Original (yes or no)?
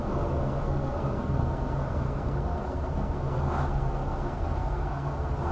no